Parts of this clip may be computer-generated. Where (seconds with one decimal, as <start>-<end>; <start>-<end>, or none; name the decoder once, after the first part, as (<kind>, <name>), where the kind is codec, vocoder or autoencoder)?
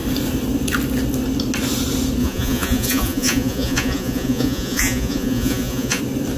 2.2-6.0 (vocoder, Vocos)